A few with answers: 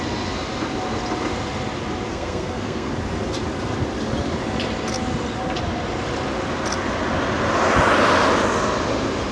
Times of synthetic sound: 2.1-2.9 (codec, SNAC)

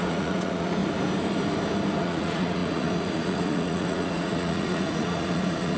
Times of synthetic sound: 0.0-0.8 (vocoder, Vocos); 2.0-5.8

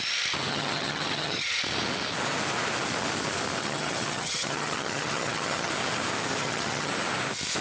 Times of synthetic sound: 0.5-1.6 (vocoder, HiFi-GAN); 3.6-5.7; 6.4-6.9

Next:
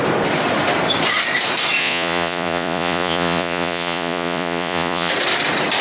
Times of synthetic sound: 1.8-5.1 (vocoder, Vocos)

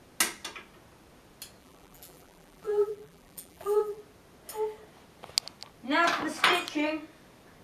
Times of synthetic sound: 1.6-4.0 (vocoder, BigVGAN v2)

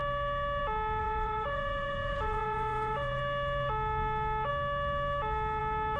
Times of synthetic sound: 1.0-3.2 (vocoder, Vocos)

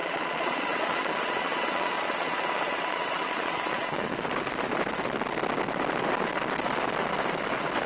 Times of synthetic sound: 0.0-4.1 (vocoder, Vocos)